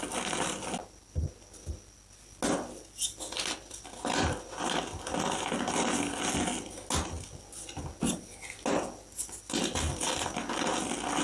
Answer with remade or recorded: recorded